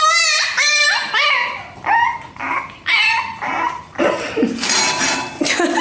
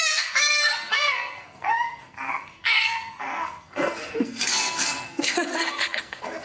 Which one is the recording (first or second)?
first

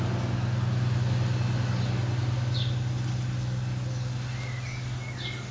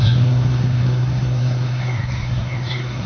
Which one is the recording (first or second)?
first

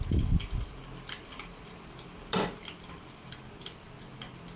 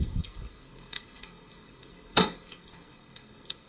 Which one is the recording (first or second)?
first